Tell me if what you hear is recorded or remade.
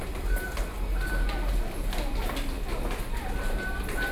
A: recorded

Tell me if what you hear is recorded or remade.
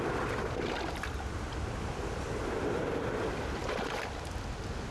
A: recorded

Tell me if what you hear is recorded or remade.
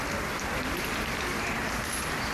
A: recorded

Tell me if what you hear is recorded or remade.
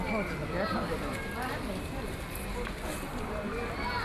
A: recorded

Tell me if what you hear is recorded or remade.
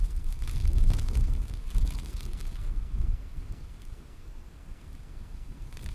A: remade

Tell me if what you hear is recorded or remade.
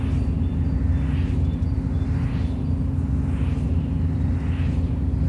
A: recorded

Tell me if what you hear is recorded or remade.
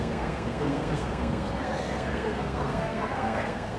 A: remade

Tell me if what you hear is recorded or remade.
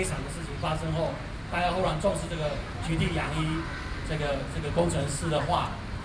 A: recorded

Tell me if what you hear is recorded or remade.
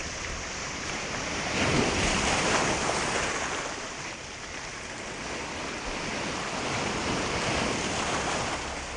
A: recorded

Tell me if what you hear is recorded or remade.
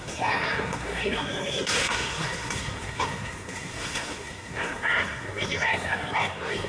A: remade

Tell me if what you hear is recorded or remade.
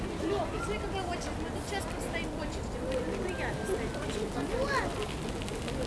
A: recorded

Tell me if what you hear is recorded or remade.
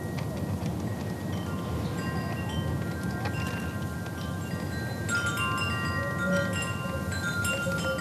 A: recorded